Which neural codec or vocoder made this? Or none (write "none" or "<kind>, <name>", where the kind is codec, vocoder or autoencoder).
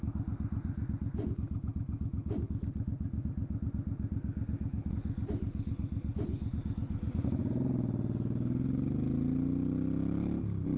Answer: none